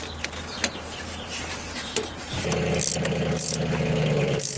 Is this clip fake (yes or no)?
no